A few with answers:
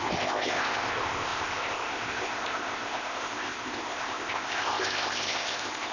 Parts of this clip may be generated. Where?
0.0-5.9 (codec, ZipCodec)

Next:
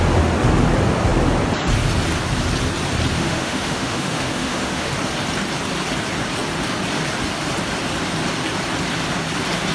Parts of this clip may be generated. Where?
3.1-4.9 (autoencoder, DAC-VAE)

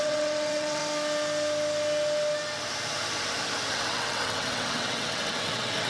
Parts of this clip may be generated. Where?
0.0-0.8 (vocoder, WaveNeXt); 3.7-5.9

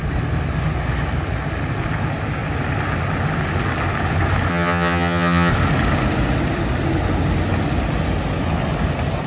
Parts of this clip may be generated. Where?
4.5-5.5 (vocoder, HiFi-GAN)

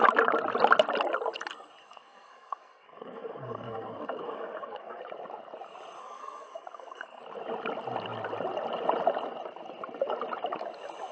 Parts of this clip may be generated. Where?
1.8-5.0 (codec, SNAC); 6.0-7.2

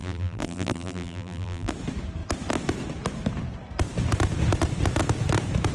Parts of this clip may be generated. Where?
0.0-1.7 (vocoder, BigVGAN v2)

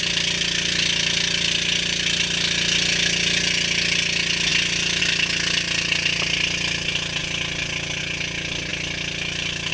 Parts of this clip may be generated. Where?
none

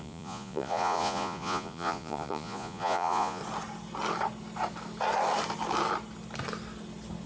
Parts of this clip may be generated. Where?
0.0-3.4 (vocoder, Vocos)